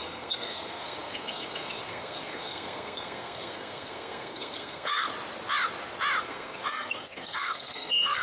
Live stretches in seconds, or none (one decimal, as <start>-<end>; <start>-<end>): 5.1-6.2